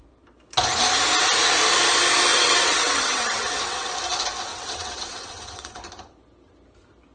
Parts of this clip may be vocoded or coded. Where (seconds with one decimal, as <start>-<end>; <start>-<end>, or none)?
2.3-3.9; 4.5-5.8